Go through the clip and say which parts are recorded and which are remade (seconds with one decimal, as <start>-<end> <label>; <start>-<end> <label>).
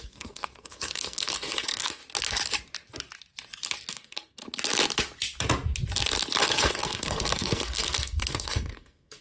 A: 0.0-2.0 remade; 2.0-3.9 recorded; 3.9-4.4 remade; 4.4-6.4 recorded; 6.4-9.2 remade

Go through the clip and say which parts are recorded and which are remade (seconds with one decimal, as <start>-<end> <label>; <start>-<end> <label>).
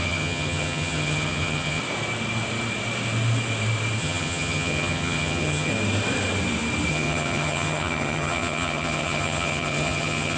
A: 0.0-1.8 remade; 1.8-4.0 recorded; 4.0-5.7 remade; 5.7-6.9 recorded; 6.9-10.4 remade